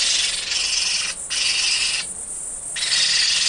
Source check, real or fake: real